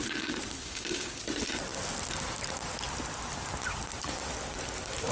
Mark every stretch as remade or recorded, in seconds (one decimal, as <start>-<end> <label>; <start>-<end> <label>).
0.0-0.6 recorded; 0.6-1.2 remade; 1.2-5.1 recorded